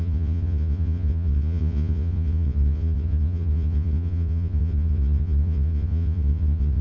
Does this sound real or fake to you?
fake